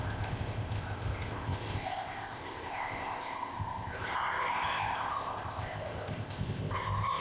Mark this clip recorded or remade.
remade